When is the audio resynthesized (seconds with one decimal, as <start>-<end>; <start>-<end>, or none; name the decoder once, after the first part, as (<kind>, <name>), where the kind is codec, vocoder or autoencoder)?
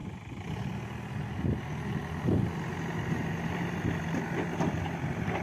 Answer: none